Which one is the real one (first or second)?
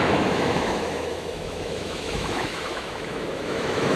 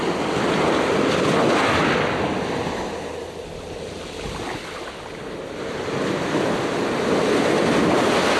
second